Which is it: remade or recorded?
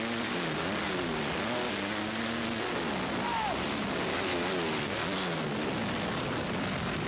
recorded